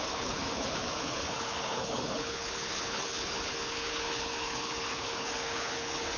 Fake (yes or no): yes